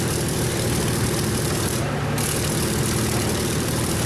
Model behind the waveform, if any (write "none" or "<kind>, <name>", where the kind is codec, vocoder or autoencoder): none